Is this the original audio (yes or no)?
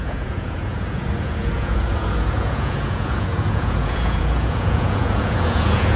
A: no